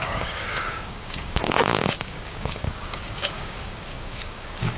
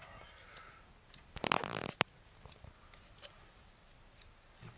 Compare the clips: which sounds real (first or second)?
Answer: second